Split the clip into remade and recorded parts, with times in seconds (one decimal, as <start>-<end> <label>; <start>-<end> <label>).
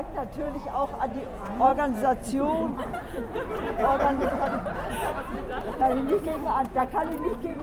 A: 0.0-1.7 remade; 1.7-6.2 recorded; 6.2-7.6 remade